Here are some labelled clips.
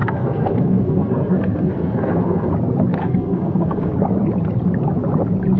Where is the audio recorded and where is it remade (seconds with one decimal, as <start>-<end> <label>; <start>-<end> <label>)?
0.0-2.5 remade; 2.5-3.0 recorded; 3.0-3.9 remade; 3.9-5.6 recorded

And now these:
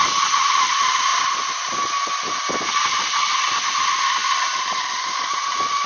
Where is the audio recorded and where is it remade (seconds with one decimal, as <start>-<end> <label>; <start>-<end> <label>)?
0.0-5.9 recorded

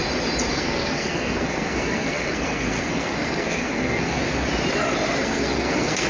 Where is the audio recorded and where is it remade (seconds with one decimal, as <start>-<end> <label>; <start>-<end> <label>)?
0.0-0.5 recorded; 0.5-4.2 remade; 4.2-5.2 recorded; 5.2-6.1 remade